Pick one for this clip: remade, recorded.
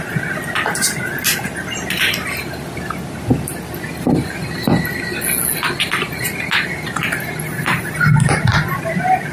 recorded